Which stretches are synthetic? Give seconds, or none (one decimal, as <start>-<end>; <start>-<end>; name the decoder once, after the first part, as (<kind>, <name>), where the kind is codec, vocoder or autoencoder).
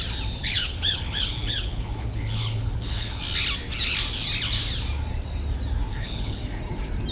0.4-3.2 (codec, HILCodec); 5.9-6.4